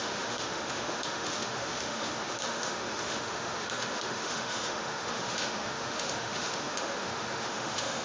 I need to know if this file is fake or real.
fake